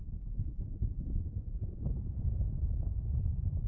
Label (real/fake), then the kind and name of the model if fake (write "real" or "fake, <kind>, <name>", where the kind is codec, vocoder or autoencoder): fake, vocoder, BigVGAN v2